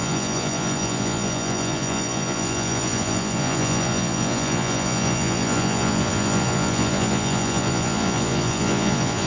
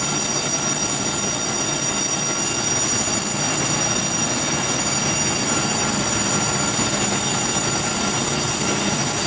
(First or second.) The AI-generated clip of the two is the first